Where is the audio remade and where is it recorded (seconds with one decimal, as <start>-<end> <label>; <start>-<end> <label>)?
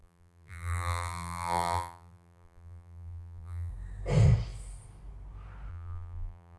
0.0-3.7 remade; 3.7-5.7 recorded; 5.7-6.6 remade